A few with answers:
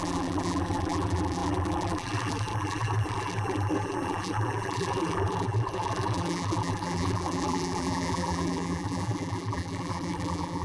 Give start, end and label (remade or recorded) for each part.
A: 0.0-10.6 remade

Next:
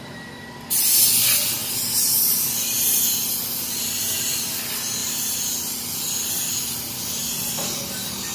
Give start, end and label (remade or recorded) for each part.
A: 0.0-1.6 recorded; 1.6-2.2 remade; 2.2-5.0 recorded; 5.0-6.3 remade; 6.3-8.3 recorded

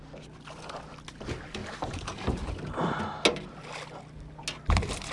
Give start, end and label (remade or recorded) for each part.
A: 0.0-1.6 recorded; 1.6-2.5 remade; 2.5-5.1 recorded

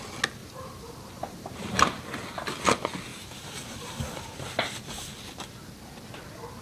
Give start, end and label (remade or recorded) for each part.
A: 0.0-0.4 recorded; 0.4-1.8 remade; 1.8-3.1 recorded; 3.1-4.5 remade; 4.5-6.6 recorded

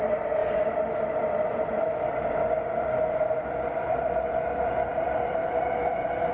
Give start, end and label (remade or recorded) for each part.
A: 0.0-6.3 remade

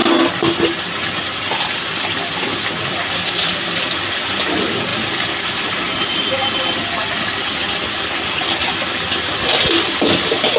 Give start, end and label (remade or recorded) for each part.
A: 0.0-4.3 remade; 4.3-10.6 recorded